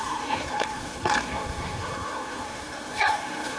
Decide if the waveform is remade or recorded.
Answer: remade